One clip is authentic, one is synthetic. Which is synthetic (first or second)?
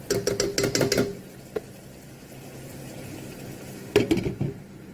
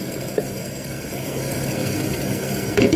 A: second